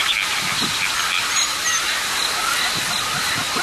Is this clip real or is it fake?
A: real